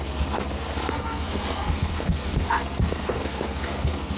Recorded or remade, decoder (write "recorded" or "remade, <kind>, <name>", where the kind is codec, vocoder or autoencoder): remade, codec, SNAC